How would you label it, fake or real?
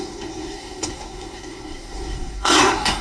fake